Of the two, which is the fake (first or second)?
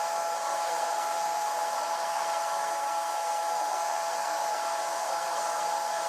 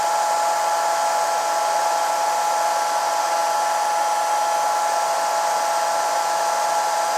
first